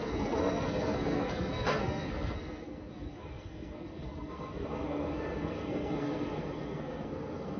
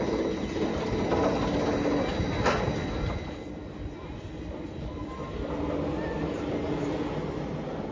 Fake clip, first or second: first